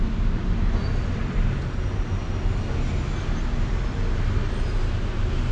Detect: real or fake real